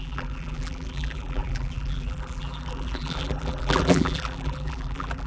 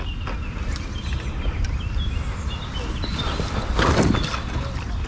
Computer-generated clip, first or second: first